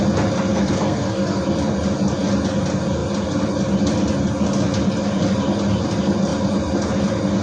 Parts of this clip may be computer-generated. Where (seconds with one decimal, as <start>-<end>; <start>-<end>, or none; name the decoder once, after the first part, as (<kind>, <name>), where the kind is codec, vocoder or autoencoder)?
0.5-1.4 (codec, SNAC)

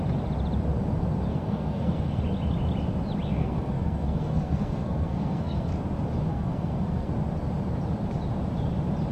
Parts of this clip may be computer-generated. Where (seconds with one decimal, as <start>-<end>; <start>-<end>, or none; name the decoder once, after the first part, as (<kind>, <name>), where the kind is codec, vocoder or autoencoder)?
1.3-2.2 (codec, SNAC); 3.4-5.7; 6.3-7.1

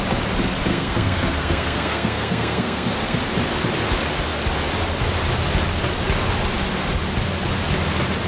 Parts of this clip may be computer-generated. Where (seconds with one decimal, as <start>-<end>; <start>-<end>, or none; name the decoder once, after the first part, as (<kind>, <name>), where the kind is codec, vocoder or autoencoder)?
0.7-3.2 (codec, SNAC)

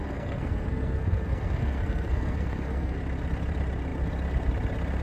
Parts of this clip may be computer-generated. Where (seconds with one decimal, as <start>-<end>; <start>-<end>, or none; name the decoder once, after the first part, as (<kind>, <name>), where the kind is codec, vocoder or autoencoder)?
0.0-3.0 (codec, SNAC)